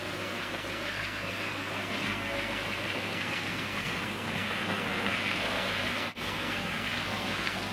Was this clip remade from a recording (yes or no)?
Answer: yes